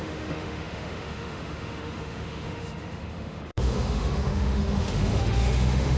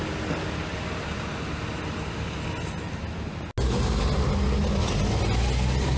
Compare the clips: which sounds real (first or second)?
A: second